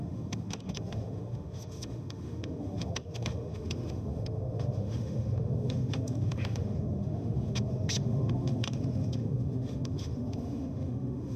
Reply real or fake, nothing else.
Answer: fake